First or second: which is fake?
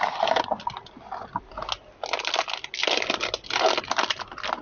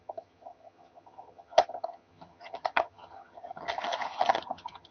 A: second